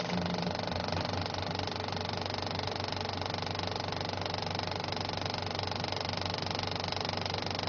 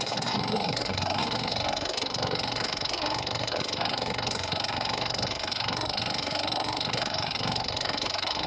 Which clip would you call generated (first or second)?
second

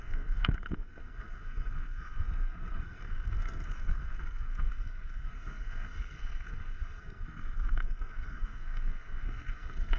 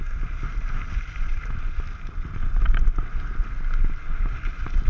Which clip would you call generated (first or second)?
first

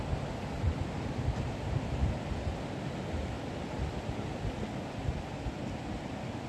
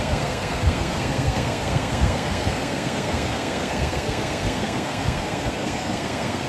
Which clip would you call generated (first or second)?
second